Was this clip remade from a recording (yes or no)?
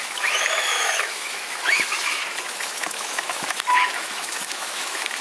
yes